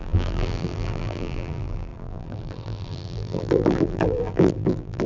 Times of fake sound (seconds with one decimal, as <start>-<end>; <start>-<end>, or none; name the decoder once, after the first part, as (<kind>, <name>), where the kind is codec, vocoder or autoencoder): 0.0-5.1 (vocoder, BigVGAN v2)